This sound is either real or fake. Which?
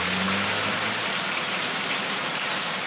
fake